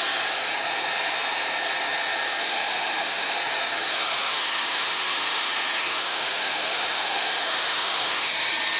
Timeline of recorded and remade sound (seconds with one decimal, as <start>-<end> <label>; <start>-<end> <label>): 0.0-2.4 recorded; 2.4-3.4 remade; 3.4-3.9 recorded; 3.9-8.3 remade; 8.3-8.8 recorded